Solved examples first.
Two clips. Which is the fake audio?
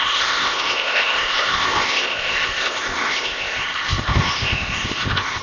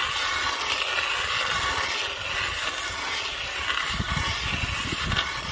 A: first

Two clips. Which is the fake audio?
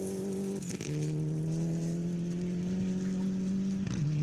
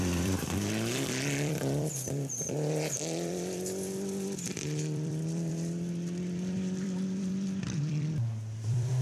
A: second